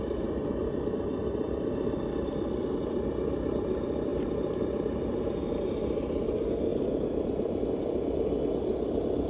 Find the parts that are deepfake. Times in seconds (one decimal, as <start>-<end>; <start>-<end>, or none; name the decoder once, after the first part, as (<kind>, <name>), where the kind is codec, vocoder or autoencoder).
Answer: none